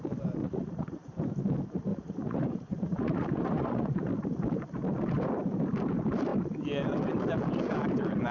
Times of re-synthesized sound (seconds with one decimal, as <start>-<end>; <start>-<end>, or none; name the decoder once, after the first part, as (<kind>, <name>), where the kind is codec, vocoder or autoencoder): 0.4-1.1 (vocoder, Vocos); 1.9-4.1